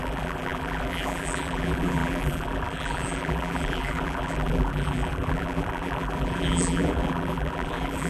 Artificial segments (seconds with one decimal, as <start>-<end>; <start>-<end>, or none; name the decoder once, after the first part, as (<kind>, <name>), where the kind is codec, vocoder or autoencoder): 0.0-8.1 (vocoder, BigVGAN v2)